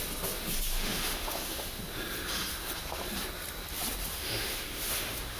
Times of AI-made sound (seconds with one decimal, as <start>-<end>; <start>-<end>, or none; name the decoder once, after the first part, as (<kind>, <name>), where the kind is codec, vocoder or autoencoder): 0.7-1.8 (autoencoder, DAC-VAE); 4.1-5.4